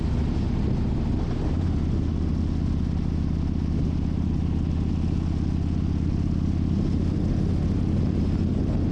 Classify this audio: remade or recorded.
recorded